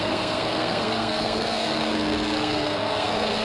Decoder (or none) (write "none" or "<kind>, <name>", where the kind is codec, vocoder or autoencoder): codec, SNAC